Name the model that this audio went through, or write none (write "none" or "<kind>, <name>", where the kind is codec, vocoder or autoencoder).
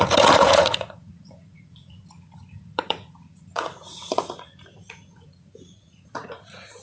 vocoder, Vocos